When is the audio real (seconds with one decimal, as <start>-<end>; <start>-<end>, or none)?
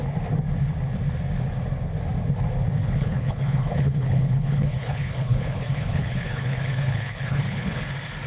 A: 0.0-2.8; 7.8-8.3